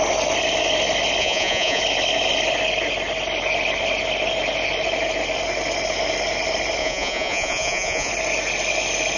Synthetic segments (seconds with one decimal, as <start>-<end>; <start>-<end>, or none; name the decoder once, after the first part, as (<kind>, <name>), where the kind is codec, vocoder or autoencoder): 1.2-1.8 (vocoder, Vocos); 6.8-8.1